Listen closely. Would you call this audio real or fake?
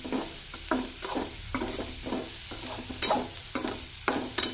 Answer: real